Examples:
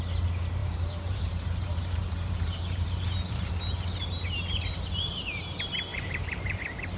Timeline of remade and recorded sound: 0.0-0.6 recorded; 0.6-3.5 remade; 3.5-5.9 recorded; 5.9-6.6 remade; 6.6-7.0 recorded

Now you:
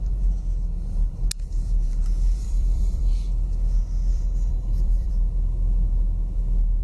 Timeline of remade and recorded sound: 0.0-2.4 recorded; 2.4-3.1 remade; 3.1-4.1 recorded; 4.1-5.1 remade; 5.1-6.8 recorded

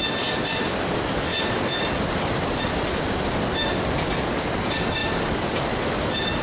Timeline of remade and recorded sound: 0.0-6.4 recorded

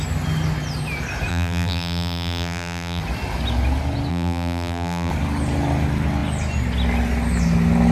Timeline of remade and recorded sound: 0.0-1.3 recorded; 1.3-3.0 remade; 3.0-4.1 recorded; 4.1-5.1 remade; 5.1-7.9 recorded

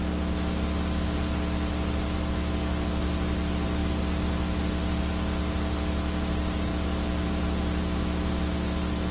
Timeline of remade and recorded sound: 0.0-9.1 recorded

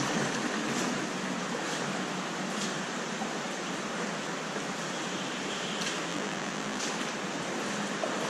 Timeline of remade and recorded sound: 0.0-6.1 recorded; 6.1-6.8 remade; 6.8-8.3 recorded